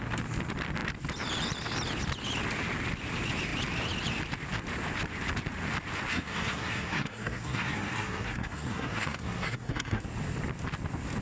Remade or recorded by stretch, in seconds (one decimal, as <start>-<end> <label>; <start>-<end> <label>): 0.0-6.1 recorded; 6.1-10.0 remade; 10.0-11.2 recorded